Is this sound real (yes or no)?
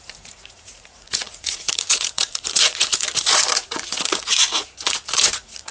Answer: no